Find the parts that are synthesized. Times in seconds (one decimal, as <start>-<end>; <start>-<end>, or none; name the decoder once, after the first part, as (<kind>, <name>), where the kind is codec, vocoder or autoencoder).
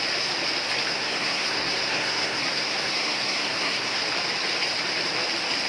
0.9-4.0 (codec, SNAC)